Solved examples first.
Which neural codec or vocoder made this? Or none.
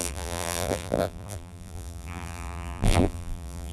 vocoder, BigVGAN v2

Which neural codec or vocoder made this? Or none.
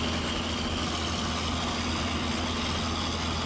none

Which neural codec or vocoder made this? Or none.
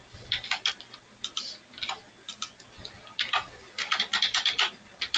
none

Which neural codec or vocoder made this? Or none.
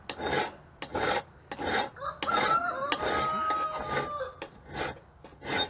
none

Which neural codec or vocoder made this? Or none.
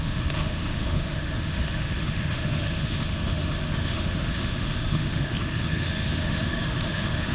autoencoder, DAC-VAE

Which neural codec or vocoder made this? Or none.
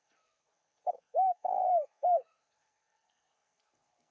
codec, SNAC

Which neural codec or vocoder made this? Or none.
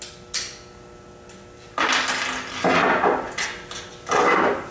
none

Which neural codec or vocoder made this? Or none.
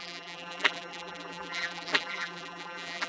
vocoder, BigVGAN v2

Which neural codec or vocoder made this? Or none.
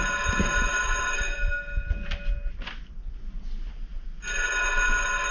none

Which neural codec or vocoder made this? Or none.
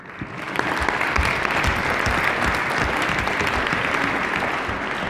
none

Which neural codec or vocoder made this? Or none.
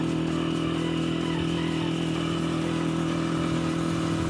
none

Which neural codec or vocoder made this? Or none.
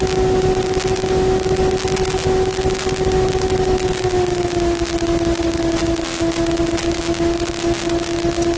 none